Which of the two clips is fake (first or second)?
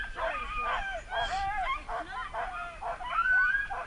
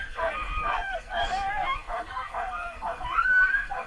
second